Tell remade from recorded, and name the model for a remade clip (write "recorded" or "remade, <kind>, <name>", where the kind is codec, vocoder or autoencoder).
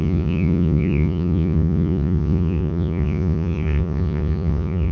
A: remade, vocoder, Vocos